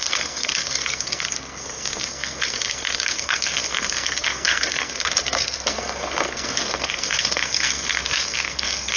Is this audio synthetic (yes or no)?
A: yes